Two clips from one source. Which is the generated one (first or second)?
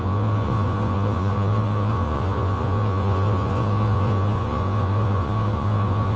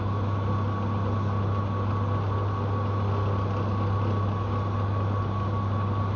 first